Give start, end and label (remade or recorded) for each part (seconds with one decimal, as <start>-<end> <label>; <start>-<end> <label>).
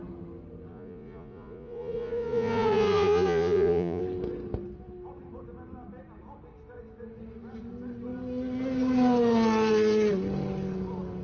0.0-0.7 recorded; 0.7-4.0 remade; 4.0-11.2 recorded